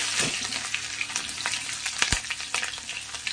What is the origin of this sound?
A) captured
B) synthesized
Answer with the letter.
A